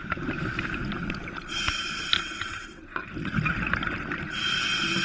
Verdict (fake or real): real